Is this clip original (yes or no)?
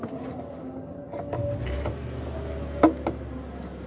yes